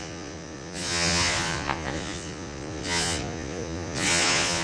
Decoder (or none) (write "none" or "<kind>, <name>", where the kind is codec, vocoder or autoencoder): vocoder, Vocos